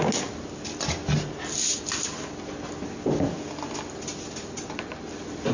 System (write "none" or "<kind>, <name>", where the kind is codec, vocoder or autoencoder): none